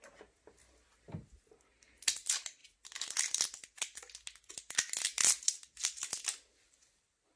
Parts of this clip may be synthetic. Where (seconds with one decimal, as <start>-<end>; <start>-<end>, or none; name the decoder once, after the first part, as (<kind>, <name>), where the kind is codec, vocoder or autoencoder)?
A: none